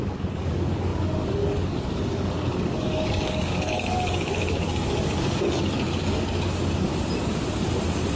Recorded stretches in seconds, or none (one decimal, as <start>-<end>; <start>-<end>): 6.9-8.2